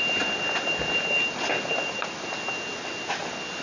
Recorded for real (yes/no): yes